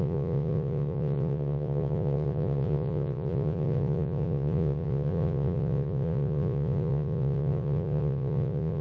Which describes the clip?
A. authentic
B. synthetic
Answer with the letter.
B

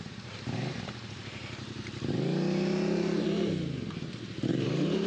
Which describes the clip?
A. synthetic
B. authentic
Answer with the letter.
A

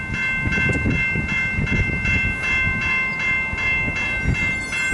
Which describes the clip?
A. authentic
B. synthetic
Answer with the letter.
A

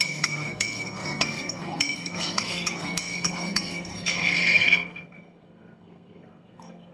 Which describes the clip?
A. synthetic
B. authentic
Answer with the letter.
A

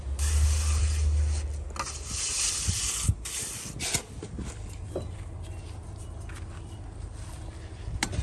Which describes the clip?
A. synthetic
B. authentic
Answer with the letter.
B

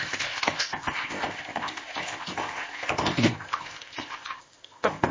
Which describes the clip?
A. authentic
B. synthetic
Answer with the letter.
B